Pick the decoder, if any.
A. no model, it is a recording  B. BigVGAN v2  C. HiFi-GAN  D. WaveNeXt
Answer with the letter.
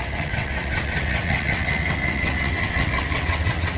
D